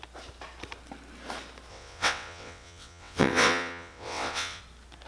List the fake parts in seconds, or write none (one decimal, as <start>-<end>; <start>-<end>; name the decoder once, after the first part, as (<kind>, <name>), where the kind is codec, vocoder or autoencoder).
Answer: 1.7-4.6 (vocoder, WaveNeXt)